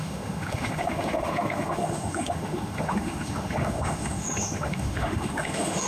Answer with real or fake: fake